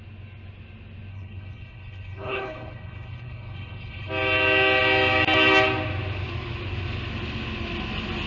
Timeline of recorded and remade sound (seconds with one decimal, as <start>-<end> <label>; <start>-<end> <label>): 0.0-1.1 recorded; 1.1-4.1 remade; 4.1-8.3 recorded